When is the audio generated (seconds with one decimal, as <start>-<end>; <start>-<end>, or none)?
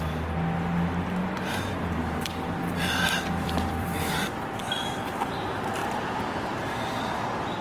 2.0-5.0; 5.8-7.6